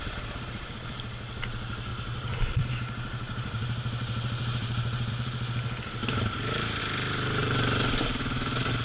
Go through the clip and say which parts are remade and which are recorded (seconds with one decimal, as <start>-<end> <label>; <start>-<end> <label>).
0.0-1.9 recorded; 1.9-5.1 remade; 5.1-6.0 recorded; 6.0-6.8 remade; 6.8-7.4 recorded; 7.4-8.0 remade; 8.0-8.8 recorded

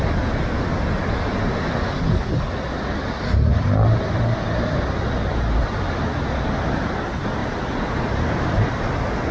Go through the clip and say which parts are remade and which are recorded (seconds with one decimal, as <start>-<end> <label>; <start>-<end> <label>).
0.0-3.5 recorded; 3.5-5.6 remade; 5.6-7.4 recorded; 7.4-8.8 remade; 8.8-9.3 recorded

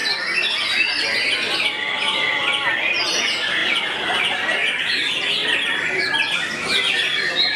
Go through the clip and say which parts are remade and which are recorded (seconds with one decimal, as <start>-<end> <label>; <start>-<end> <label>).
0.0-3.6 recorded; 3.6-4.8 remade; 4.8-5.4 recorded; 5.4-6.1 remade; 6.1-7.6 recorded

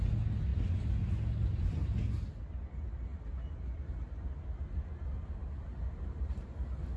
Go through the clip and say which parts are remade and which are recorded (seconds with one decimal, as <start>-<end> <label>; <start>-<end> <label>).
0.0-7.0 recorded

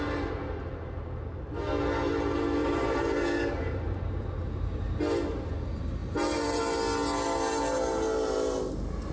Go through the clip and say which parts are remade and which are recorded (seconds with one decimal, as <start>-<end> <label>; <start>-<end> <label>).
0.0-2.6 recorded; 2.6-5.0 remade; 5.0-6.0 recorded; 6.0-6.6 remade; 6.6-9.1 recorded

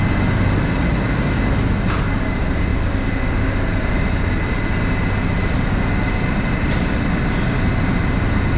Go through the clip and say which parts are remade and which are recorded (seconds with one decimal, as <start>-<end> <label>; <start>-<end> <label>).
0.0-8.6 recorded

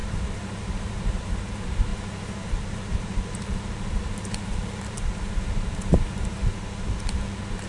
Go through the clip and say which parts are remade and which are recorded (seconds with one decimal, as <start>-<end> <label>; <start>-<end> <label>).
0.0-1.9 remade; 1.9-2.6 recorded; 2.6-6.5 remade; 6.5-7.1 recorded; 7.1-7.7 remade